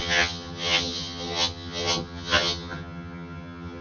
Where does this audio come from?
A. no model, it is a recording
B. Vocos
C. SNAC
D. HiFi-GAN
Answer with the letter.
D